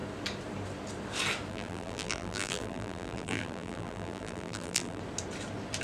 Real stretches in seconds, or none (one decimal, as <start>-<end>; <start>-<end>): 0.0-1.5; 5.0-5.8